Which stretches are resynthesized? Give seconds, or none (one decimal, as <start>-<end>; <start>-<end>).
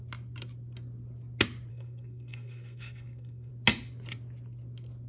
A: 1.7-3.5